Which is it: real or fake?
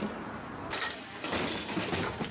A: real